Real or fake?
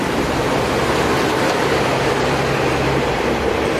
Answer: fake